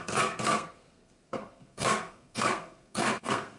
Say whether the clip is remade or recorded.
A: remade